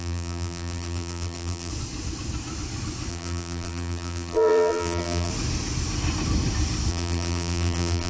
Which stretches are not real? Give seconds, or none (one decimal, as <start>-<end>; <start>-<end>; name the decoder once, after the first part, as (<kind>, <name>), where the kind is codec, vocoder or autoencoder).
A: 0.0-1.7 (vocoder, BigVGAN v2); 3.1-5.3; 6.9-8.1

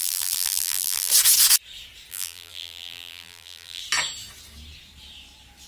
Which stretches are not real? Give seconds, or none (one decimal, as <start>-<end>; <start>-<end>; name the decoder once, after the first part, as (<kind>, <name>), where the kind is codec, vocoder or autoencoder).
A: 0.0-1.1 (vocoder, BigVGAN v2); 2.1-3.8

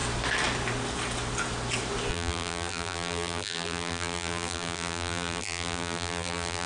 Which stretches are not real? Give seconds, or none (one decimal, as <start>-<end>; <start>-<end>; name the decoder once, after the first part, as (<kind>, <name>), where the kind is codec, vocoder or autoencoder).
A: 2.1-6.7 (vocoder, BigVGAN v2)

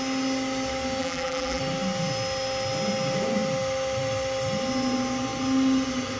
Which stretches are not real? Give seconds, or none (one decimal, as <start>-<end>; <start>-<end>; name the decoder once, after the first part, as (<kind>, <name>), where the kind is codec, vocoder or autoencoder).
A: 1.0-1.6 (vocoder, BigVGAN v2)

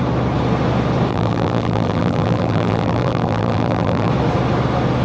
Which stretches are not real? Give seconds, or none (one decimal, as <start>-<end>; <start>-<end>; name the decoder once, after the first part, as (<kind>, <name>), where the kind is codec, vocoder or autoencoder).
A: 1.1-4.1 (vocoder, BigVGAN v2)